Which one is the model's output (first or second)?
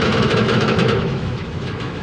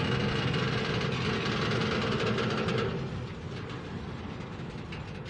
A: first